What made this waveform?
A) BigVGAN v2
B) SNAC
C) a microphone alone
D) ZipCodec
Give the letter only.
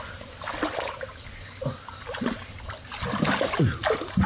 C